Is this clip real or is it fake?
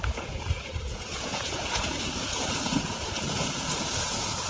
fake